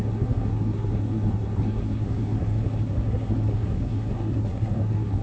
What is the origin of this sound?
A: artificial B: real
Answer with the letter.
A